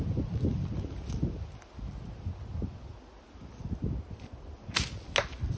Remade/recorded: recorded